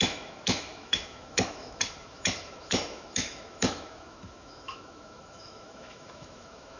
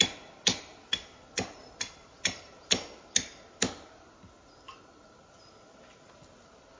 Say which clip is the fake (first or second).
first